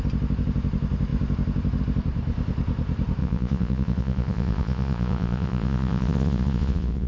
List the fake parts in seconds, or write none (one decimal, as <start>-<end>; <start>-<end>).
3.2-7.1